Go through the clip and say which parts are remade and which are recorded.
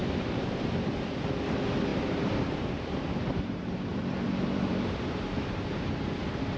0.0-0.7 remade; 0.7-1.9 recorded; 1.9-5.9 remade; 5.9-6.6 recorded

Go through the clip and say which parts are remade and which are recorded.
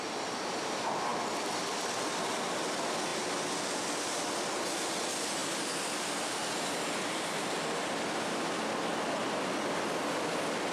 0.0-10.7 recorded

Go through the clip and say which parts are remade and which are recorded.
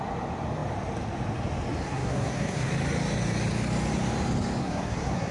0.0-1.8 recorded; 1.8-2.7 remade; 2.7-4.6 recorded; 4.6-5.3 remade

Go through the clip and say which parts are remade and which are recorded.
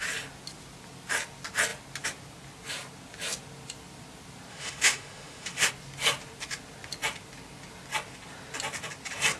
0.0-4.5 recorded; 4.5-5.7 remade; 5.7-9.4 recorded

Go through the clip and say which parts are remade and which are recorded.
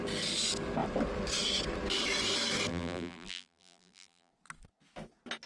0.0-2.7 recorded; 2.7-4.3 remade; 4.3-5.5 recorded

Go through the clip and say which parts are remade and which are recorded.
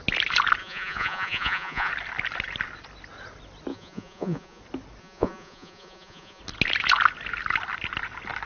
0.0-0.6 recorded; 0.6-1.9 remade; 1.9-3.7 recorded; 3.7-4.6 remade; 4.6-5.0 recorded; 5.0-6.4 remade; 6.4-8.5 recorded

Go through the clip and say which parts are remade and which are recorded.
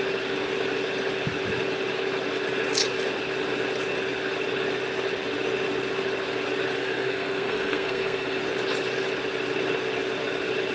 0.0-6.8 recorded; 6.8-8.4 remade; 8.4-10.7 recorded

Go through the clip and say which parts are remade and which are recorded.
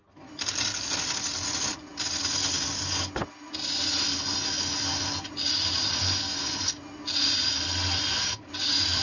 0.0-9.0 recorded